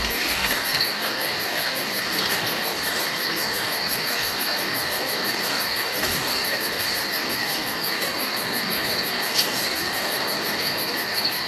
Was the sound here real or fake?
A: fake